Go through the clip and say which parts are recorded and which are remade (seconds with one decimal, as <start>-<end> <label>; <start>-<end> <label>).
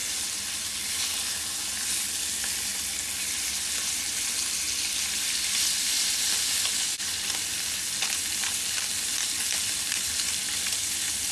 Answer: 0.0-11.3 recorded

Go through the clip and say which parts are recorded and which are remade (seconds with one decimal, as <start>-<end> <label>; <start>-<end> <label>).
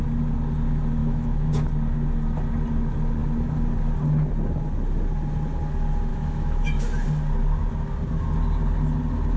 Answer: 0.0-1.0 recorded; 1.0-1.5 remade; 1.5-6.1 recorded; 6.1-6.8 remade; 6.8-9.4 recorded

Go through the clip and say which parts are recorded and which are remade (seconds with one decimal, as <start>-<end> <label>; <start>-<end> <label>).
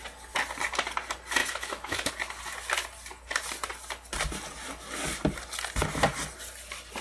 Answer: 0.0-1.4 recorded; 1.4-2.1 remade; 2.1-7.0 recorded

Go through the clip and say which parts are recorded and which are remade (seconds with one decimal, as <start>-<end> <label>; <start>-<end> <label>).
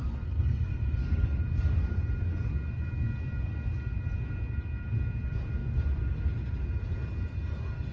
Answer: 0.0-1.4 remade; 1.4-7.9 recorded